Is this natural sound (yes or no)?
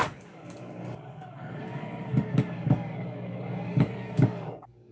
no